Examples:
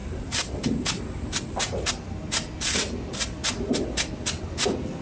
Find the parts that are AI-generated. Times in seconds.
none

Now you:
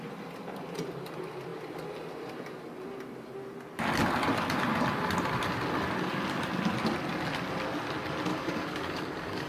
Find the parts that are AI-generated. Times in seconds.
8.3-9.5 (codec, DAC)

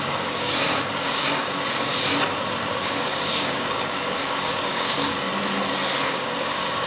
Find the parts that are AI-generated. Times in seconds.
0.0-1.9 (codec, DAC); 2.8-5.3; 6.1-6.9

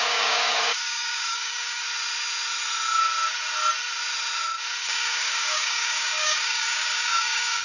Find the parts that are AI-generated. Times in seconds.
0.0-1.8 (codec, DAC); 4.8-7.6

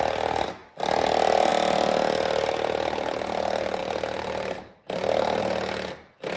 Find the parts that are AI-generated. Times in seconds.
none

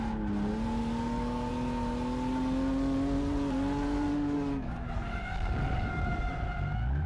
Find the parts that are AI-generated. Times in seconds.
0.8-1.5 (codec, DAC); 4.1-6.3

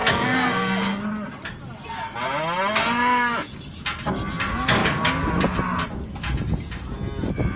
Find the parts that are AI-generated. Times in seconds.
4.8-5.3 (codec, DAC)

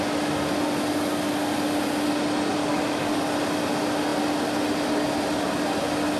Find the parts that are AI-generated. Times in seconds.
2.6-3.3 (codec, DAC)